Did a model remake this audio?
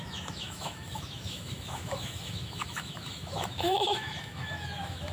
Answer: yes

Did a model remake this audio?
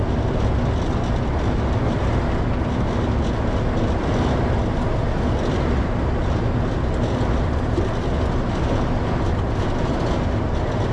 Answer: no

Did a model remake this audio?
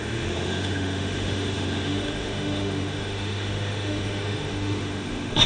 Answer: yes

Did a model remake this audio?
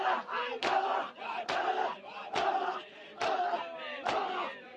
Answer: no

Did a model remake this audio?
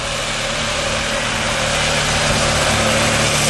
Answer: no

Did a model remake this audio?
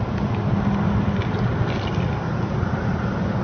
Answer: no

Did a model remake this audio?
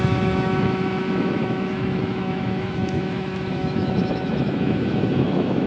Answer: yes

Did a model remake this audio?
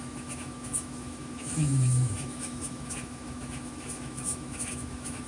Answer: yes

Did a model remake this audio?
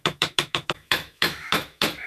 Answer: yes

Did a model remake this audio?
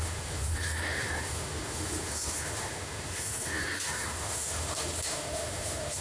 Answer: yes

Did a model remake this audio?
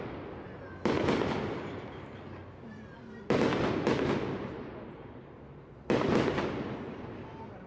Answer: no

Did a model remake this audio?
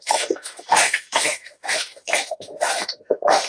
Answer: yes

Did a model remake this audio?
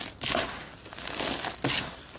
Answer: no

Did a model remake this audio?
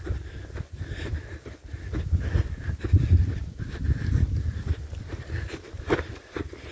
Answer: no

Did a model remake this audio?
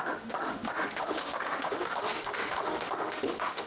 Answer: yes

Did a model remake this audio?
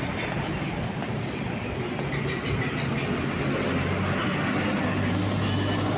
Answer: no